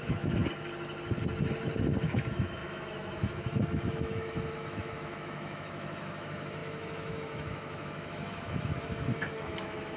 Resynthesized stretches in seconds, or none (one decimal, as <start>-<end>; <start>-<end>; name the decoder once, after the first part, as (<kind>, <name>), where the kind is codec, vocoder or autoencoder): 0.0-0.4 (autoencoder, DAC-VAE); 2.0-10.0